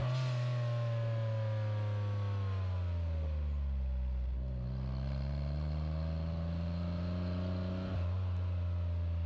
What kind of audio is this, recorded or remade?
recorded